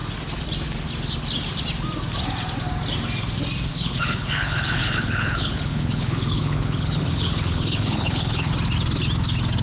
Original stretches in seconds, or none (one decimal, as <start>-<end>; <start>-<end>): 0.0-3.7; 8.5-9.6

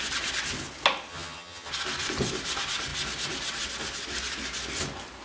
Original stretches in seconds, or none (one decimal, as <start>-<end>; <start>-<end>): 0.0-1.1; 1.7-5.2

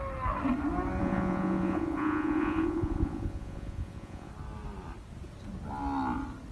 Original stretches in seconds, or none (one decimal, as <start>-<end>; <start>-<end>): 0.0-1.0; 4.3-6.5

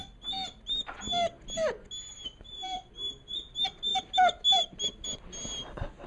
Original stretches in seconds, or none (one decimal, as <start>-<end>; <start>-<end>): 0.0-6.1

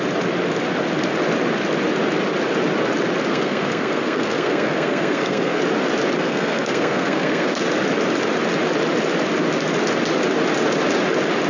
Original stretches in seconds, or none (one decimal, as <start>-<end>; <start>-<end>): 0.0-3.3; 5.6-6.2; 7.6-11.5

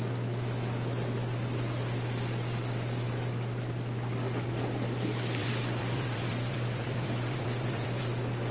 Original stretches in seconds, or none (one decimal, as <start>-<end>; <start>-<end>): 0.0-5.4; 8.0-8.5

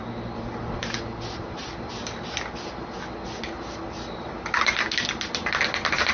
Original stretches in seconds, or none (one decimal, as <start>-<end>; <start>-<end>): 0.0-6.1

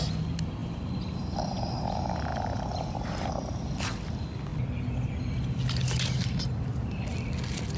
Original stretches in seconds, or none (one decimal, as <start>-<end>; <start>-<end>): 0.0-4.5; 5.1-7.8